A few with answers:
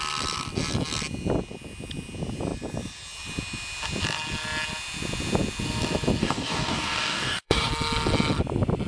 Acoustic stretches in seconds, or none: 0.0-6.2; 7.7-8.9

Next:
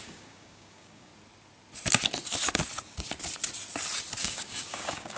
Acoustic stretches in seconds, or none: 1.1-4.2

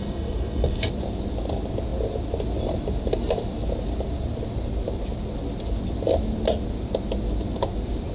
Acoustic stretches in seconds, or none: 0.9-8.1

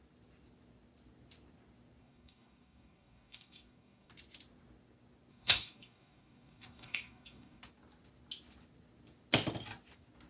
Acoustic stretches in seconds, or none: 0.0-2.0; 4.1-5.3; 7.6-10.3

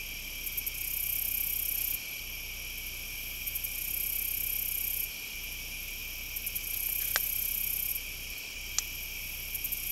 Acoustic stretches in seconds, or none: 0.0-9.9

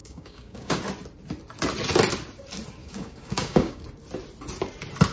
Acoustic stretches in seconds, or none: 0.8-2.8; 3.8-5.1